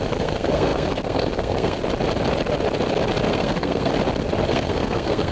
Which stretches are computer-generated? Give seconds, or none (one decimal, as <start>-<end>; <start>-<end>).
0.0-1.8; 3.3-3.9; 4.5-5.3

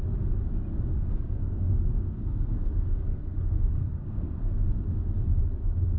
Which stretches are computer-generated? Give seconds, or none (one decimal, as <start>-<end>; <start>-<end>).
0.9-4.5

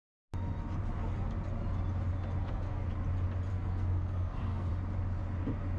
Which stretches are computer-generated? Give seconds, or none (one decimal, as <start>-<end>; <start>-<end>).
2.4-2.9; 3.5-4.7

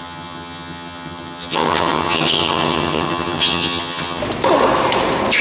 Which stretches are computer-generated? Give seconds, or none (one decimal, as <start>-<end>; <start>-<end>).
0.0-4.2

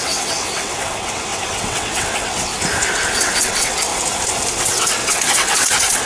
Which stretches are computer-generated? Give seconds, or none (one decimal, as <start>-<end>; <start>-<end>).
0.0-2.5; 3.1-3.9; 4.5-6.1

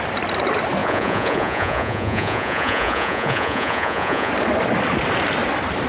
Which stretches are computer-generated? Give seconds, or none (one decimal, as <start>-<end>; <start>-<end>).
0.8-4.3